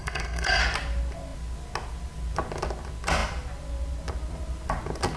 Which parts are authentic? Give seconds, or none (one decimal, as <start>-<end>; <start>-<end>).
0.6-5.2

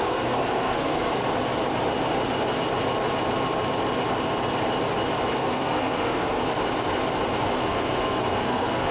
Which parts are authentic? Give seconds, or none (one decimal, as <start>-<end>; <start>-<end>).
1.2-5.3; 6.4-7.6

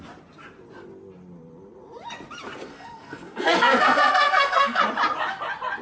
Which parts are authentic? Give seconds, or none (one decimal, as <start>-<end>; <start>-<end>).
0.0-2.6; 4.8-5.8

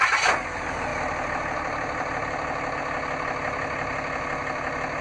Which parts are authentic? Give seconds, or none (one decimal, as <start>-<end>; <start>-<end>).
0.0-5.0

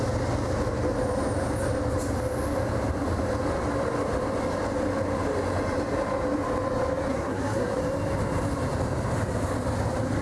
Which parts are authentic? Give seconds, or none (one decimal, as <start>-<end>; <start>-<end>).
0.0-7.1; 7.8-10.2

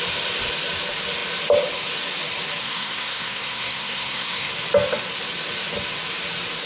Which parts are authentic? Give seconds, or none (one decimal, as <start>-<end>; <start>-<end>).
0.0-2.6; 4.5-6.7